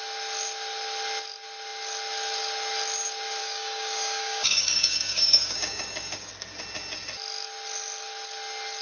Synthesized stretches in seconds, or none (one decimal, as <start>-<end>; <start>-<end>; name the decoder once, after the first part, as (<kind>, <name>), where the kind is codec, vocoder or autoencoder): 3.4-6.3 (codec, DAC)